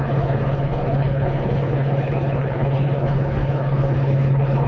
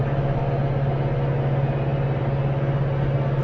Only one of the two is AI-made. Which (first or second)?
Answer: first